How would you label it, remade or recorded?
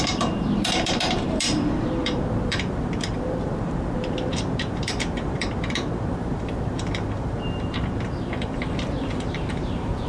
remade